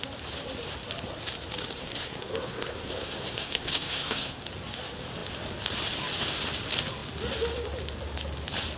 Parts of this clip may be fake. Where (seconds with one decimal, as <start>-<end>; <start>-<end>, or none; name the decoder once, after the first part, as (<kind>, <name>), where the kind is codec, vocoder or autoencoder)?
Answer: 1.8-4.4 (codec, SNAC)